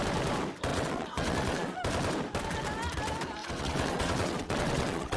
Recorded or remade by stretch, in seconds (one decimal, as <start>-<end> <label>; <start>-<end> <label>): 0.0-0.7 recorded; 0.7-1.8 remade; 1.8-3.4 recorded; 3.4-5.2 remade